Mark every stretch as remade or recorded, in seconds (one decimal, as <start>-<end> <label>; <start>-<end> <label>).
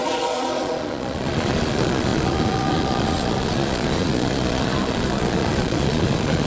0.0-6.5 remade